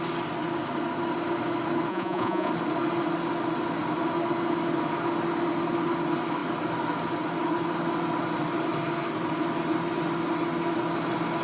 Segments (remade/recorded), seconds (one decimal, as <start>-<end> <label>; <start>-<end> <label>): 0.0-1.9 recorded; 1.9-2.5 remade; 2.5-11.4 recorded